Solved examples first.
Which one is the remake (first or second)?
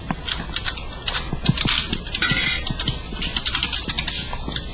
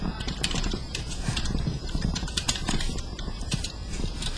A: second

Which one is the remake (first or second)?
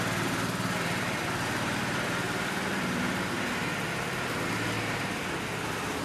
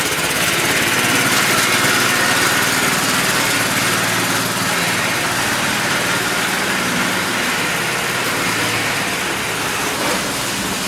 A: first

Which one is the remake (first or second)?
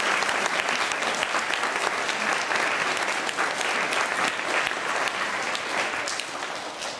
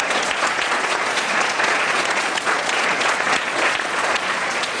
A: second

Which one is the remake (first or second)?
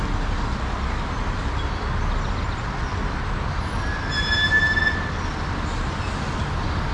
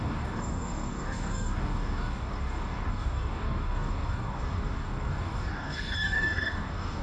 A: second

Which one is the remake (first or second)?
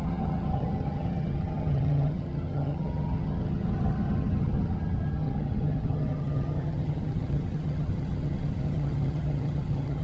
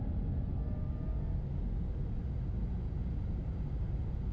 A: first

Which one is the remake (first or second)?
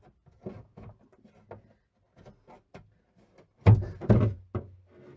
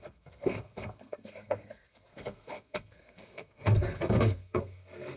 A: second